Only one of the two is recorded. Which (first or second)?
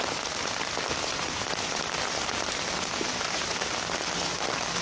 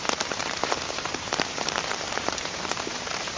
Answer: first